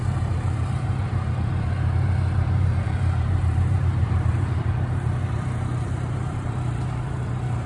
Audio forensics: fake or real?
fake